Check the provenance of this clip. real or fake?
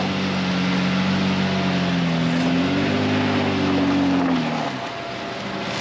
real